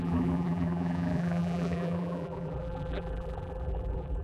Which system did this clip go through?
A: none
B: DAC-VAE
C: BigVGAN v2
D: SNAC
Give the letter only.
C